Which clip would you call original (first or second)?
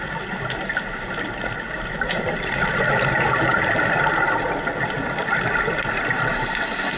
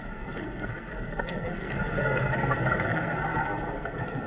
first